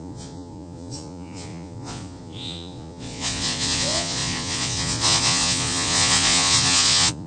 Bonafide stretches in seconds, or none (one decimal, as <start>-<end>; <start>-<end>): none